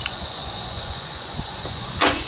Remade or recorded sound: remade